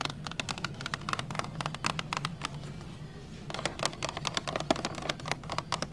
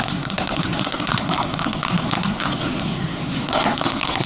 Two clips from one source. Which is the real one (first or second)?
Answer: first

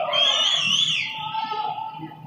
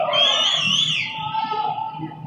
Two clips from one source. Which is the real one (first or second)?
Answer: second